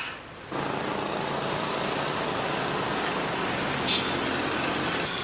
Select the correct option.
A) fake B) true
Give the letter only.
B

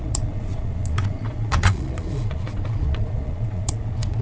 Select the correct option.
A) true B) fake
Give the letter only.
B